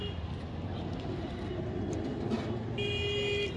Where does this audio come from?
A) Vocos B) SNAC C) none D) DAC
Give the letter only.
C